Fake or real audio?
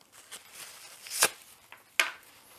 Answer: real